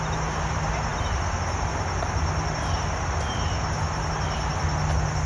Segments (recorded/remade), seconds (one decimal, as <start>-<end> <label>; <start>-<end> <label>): 0.0-5.3 recorded